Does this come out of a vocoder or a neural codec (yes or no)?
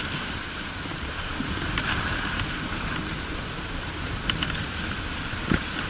no